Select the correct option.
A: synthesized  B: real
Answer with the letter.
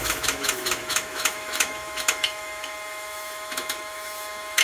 A